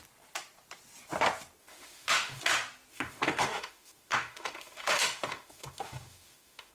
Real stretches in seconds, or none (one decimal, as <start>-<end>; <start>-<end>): 0.0-1.6; 2.4-2.9